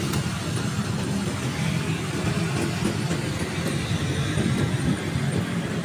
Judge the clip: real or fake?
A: real